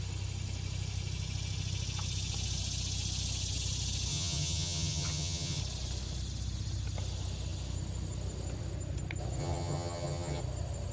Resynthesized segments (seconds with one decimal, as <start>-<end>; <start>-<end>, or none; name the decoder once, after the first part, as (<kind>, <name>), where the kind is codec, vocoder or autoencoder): 4.1-5.6 (vocoder, HiFi-GAN); 9.4-10.4